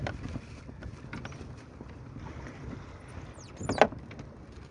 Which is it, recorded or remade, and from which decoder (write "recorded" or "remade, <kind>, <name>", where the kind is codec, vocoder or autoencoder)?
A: recorded